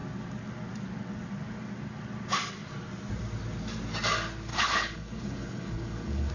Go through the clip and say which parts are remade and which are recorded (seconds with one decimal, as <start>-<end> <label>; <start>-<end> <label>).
0.0-4.5 recorded; 4.5-6.3 remade